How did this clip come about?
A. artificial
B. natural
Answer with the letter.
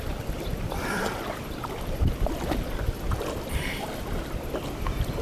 B